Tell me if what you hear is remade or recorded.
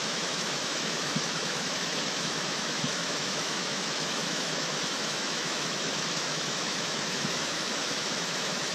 remade